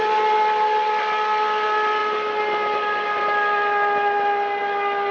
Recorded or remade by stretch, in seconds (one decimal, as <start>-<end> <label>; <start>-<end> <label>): 0.0-5.1 recorded